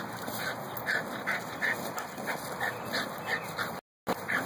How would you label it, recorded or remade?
recorded